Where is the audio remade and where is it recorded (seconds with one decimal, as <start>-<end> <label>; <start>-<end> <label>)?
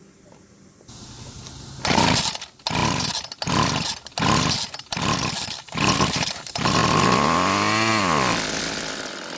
0.0-9.4 recorded